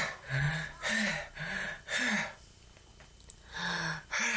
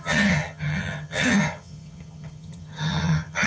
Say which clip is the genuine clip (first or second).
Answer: first